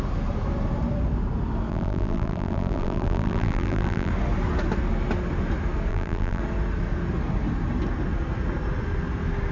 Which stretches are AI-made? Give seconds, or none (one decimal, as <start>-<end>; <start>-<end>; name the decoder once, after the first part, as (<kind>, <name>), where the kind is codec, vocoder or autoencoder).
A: 1.7-4.1 (vocoder, BigVGAN v2); 5.9-6.4